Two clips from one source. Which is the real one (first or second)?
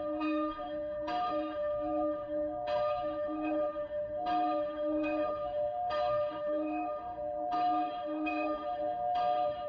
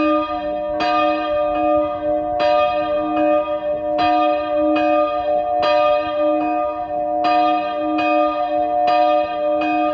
second